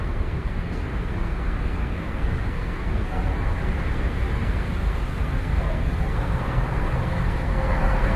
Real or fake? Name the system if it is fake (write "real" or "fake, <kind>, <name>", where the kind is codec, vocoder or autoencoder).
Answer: fake, codec, SNAC